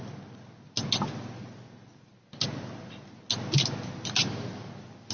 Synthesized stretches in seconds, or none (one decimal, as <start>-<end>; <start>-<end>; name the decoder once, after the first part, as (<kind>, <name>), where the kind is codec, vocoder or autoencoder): none